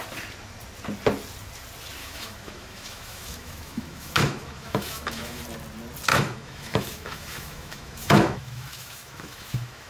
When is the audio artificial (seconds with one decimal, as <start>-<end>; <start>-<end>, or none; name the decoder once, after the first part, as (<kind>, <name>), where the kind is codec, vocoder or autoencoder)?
2.0-5.4 (autoencoder, DAC-VAE); 6.1-9.9